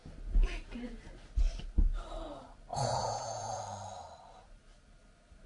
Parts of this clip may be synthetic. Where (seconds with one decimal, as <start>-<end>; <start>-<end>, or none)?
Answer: 2.7-3.6